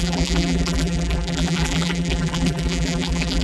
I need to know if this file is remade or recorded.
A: remade